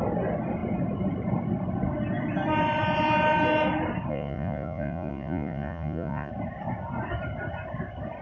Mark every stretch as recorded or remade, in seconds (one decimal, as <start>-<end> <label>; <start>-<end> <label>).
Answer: 0.0-4.1 recorded; 4.1-6.3 remade; 6.3-8.2 recorded